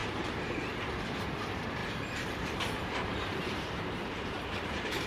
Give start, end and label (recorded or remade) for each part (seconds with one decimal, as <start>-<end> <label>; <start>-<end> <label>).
0.0-0.7 remade; 0.7-1.8 recorded; 1.8-5.1 remade